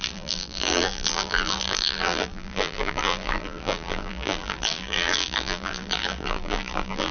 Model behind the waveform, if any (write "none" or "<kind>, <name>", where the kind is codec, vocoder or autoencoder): vocoder, BigVGAN v2